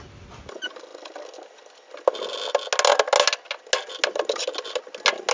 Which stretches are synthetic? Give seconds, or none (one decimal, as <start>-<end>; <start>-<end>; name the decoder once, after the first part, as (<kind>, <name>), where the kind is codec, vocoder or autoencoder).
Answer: none